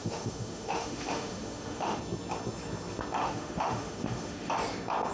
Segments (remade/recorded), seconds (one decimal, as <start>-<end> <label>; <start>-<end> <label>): 0.0-2.0 remade; 2.0-3.2 recorded; 3.2-4.5 remade; 4.5-5.1 recorded